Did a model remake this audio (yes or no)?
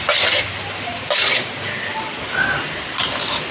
no